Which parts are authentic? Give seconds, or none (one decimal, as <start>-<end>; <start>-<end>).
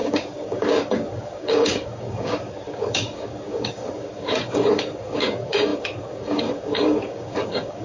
none